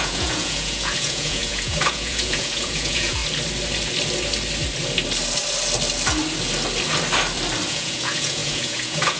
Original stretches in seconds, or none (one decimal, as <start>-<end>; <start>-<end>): 3.2-7.7